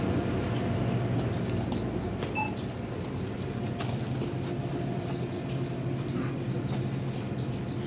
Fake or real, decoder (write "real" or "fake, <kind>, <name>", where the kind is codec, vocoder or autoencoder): real